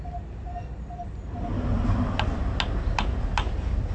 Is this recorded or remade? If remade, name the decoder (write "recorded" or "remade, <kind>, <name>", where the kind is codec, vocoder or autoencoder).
recorded